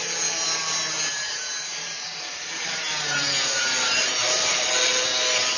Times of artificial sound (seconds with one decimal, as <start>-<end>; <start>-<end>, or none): 1.1-4.5